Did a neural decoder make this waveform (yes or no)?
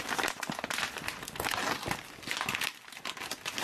no